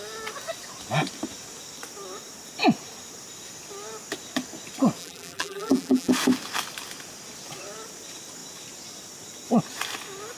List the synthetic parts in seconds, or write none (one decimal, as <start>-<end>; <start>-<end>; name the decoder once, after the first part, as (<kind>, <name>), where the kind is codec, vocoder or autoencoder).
5.0-6.1 (vocoder, BigVGAN v2)